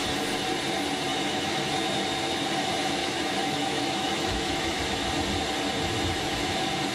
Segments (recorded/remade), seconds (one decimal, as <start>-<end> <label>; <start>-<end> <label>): 0.0-1.1 recorded; 1.1-1.7 remade; 1.7-3.0 recorded; 3.0-4.8 remade; 4.8-6.9 recorded